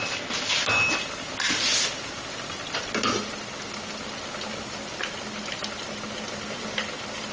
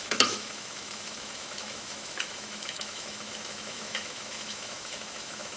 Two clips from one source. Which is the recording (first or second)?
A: first